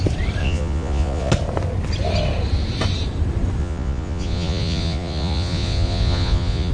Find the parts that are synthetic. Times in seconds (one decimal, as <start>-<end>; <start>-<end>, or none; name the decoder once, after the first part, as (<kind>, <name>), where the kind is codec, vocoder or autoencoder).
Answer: 0.4-1.3 (vocoder, Vocos); 3.6-6.7